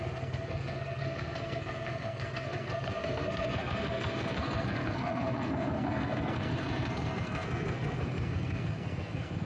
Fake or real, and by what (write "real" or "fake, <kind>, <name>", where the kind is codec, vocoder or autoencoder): fake, codec, SNAC